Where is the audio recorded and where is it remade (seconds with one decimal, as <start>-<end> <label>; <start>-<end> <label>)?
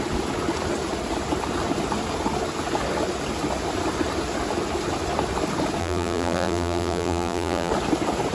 0.0-5.8 recorded; 5.8-7.7 remade; 7.7-8.3 recorded